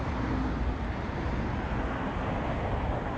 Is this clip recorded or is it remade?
recorded